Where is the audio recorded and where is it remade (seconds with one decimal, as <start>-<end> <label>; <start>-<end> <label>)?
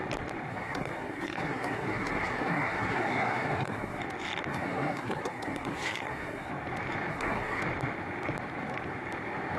0.0-0.5 recorded; 0.5-4.0 remade; 4.0-4.5 recorded; 4.5-6.5 remade; 6.5-7.1 recorded; 7.1-7.6 remade; 7.6-9.6 recorded